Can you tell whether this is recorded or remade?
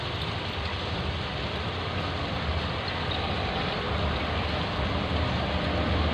remade